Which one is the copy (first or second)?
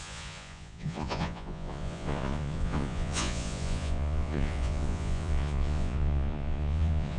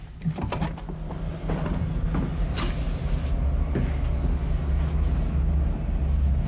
first